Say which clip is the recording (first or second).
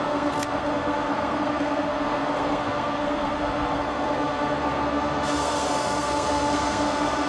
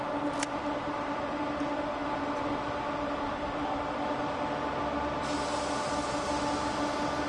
second